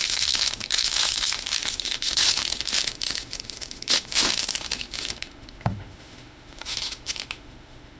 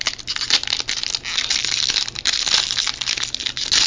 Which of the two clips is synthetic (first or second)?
first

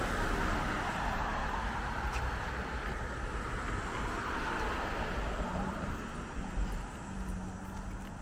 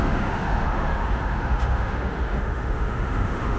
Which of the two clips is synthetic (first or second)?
second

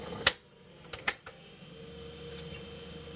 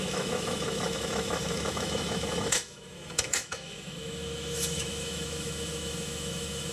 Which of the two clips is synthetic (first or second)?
second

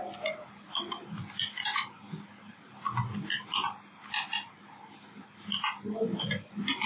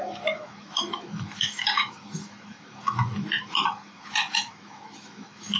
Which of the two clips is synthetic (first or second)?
second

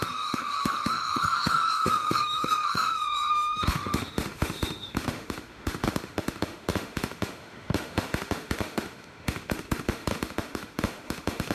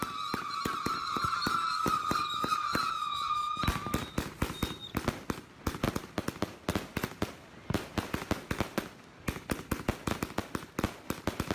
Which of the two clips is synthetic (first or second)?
first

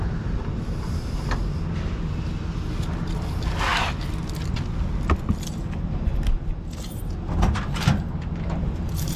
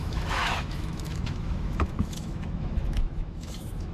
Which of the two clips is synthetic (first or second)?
second